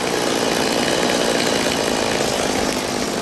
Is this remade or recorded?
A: recorded